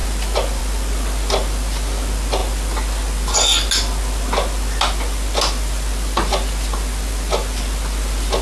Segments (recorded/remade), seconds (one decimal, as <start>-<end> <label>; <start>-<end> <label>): 0.0-8.4 recorded